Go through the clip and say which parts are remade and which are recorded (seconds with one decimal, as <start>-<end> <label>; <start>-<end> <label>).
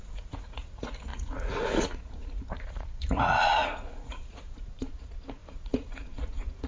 0.0-6.7 remade